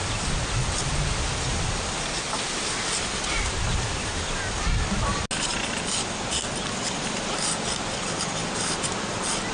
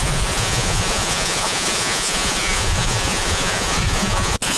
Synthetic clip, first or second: second